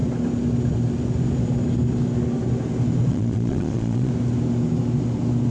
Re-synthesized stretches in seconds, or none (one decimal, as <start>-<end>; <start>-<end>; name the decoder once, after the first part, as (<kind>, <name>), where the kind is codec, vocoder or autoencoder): 3.1-4.1 (vocoder, Vocos)